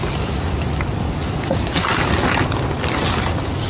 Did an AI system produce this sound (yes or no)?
no